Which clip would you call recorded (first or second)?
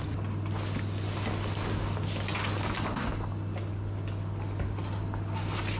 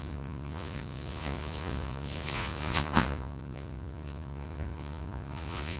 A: first